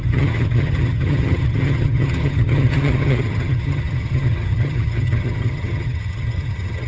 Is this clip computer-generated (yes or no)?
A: yes